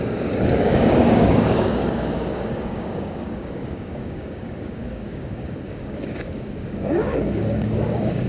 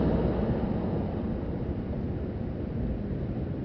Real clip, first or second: second